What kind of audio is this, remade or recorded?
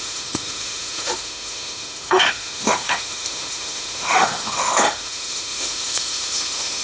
remade